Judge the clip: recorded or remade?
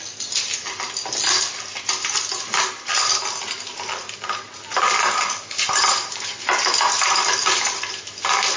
recorded